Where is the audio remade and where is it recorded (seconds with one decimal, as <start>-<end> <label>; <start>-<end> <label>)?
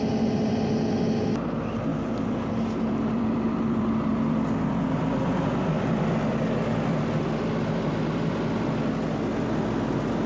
0.0-1.9 recorded; 1.9-5.8 remade; 5.8-10.3 recorded